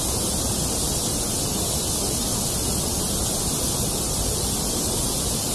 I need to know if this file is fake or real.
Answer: real